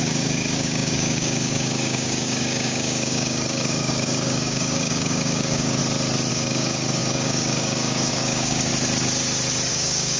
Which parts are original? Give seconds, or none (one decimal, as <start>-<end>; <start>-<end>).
5.8-6.3; 8.7-9.7